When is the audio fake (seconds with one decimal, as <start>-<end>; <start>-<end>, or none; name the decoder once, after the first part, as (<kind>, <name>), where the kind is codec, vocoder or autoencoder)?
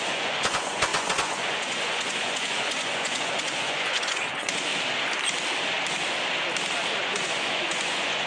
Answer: 0.0-4.7 (vocoder, Vocos); 7.0-8.3